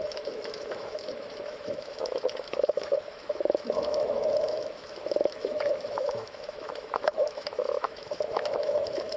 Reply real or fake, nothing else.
fake